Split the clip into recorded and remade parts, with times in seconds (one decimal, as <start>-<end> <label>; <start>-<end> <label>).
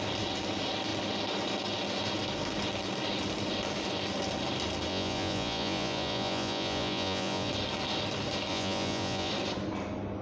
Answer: 0.0-4.9 recorded; 4.9-7.5 remade; 7.5-8.5 recorded; 8.5-9.3 remade; 9.3-10.2 recorded